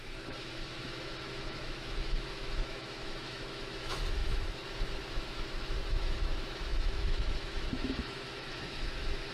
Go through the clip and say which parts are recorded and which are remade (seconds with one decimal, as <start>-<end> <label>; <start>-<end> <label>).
0.0-9.3 remade